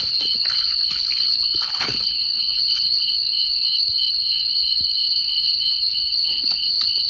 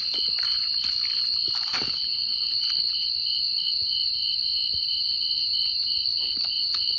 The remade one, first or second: first